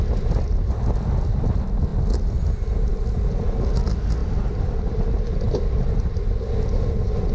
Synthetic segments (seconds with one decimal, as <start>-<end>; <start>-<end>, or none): none